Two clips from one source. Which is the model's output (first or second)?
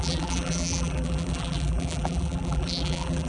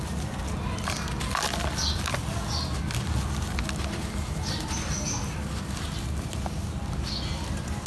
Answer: first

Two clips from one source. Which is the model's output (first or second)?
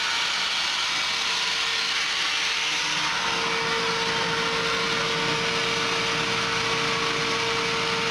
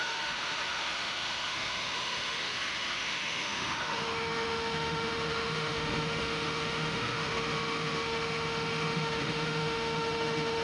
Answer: second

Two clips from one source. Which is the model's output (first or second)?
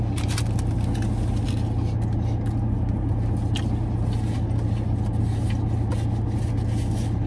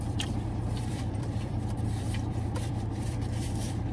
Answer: second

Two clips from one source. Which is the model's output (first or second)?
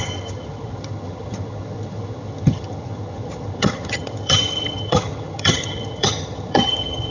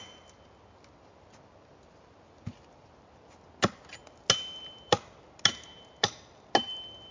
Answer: first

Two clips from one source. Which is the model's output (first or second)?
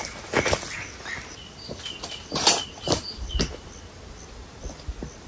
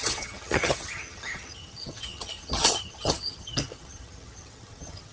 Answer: second